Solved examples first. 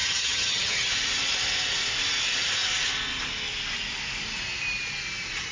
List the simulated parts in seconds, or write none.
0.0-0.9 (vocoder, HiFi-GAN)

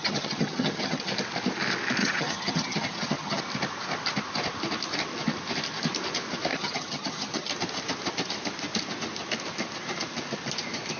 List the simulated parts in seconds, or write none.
0.0-1.1 (vocoder, HiFi-GAN); 2.0-3.4; 6.5-7.5

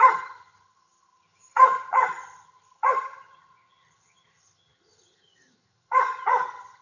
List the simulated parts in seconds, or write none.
0.0-6.8 (vocoder, HiFi-GAN)

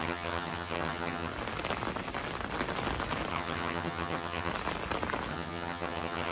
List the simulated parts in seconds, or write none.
0.0-1.3 (vocoder, HiFi-GAN); 3.3-4.5; 5.3-6.3

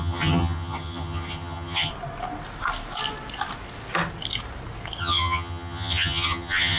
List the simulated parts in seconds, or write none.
0.0-1.9 (vocoder, HiFi-GAN); 5.0-6.8

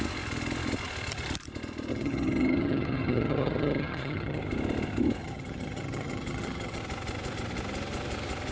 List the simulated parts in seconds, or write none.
1.9-4.4 (vocoder, HiFi-GAN); 5.2-6.8